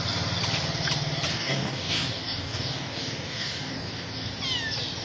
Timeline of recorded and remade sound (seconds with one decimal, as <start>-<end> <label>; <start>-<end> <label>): 0.0-1.3 recorded; 1.3-4.3 remade; 4.3-5.0 recorded